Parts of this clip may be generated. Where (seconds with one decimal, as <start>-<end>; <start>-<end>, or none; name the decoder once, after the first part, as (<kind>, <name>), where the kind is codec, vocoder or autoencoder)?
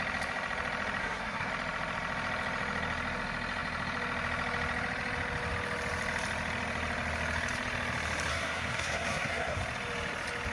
1.0-1.5 (codec, SNAC); 8.3-9.6